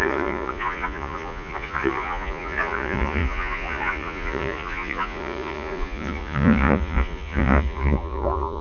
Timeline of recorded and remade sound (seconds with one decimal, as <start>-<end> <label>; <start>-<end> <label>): 0.0-8.6 remade